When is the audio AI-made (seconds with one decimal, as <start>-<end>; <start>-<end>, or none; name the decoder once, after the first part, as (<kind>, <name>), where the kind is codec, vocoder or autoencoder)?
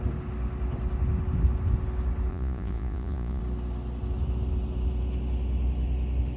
2.3-3.4 (vocoder, Vocos)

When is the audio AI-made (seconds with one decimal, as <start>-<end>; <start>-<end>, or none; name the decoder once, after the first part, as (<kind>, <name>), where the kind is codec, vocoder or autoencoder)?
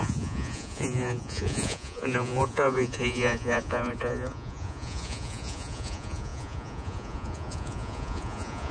0.0-8.7 (vocoder, Vocos)